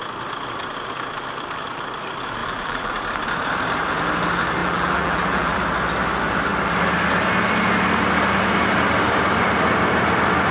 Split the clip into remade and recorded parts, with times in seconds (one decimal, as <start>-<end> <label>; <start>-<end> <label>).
0.0-2.4 recorded; 2.4-2.9 remade; 2.9-4.6 recorded; 4.6-5.6 remade; 5.6-10.5 recorded